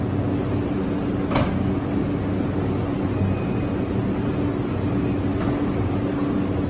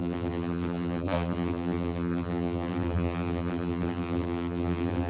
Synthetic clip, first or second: second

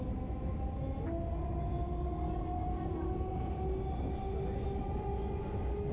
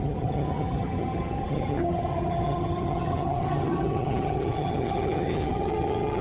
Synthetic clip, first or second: second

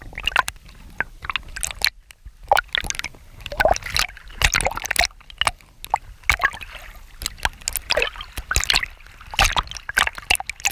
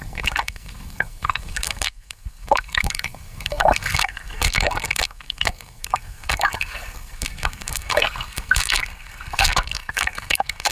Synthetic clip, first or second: second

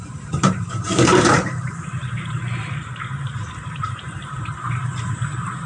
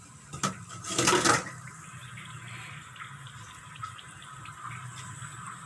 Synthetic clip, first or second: first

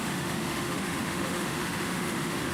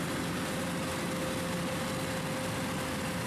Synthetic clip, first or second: first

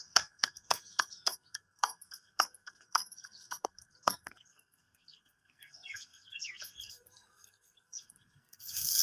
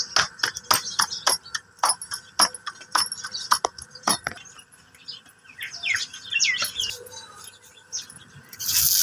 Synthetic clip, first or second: first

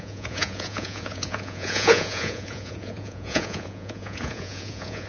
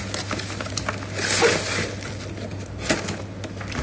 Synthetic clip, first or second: first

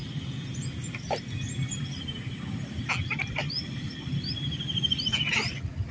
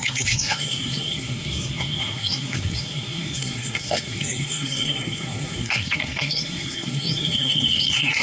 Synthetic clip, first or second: second